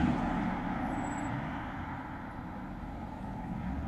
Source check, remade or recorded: recorded